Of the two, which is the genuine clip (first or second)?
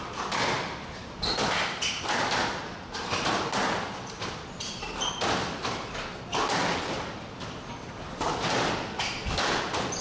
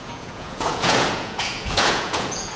first